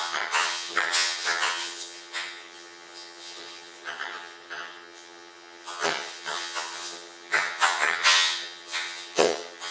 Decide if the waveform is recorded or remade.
remade